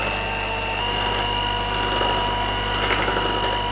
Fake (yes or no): no